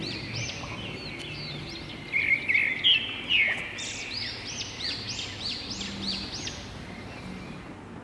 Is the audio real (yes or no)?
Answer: yes